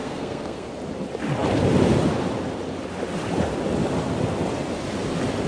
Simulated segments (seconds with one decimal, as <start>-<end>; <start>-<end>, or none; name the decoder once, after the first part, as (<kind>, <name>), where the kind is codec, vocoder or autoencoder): 0.0-0.7 (codec, SNAC)